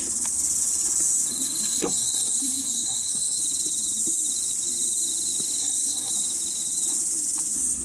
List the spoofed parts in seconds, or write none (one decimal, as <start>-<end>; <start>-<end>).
1.7-3.4; 5.6-6.1